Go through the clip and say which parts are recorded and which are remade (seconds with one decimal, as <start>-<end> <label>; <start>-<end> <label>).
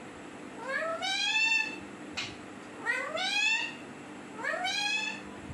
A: 0.0-0.9 recorded; 0.9-1.8 remade; 1.8-5.5 recorded